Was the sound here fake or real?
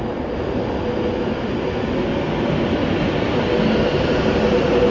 real